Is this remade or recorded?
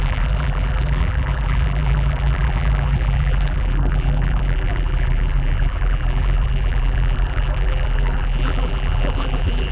remade